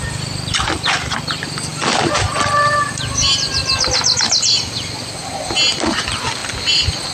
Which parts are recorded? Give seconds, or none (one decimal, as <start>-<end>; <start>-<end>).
0.0-7.1